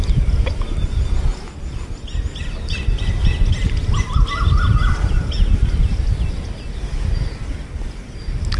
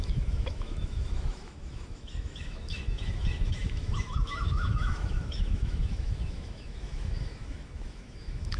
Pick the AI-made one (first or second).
second